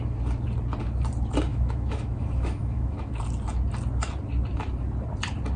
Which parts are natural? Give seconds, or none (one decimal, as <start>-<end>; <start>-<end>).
0.0-1.5; 3.2-5.6